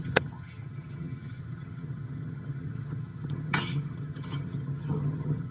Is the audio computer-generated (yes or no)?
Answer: yes